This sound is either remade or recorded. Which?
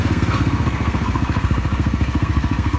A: remade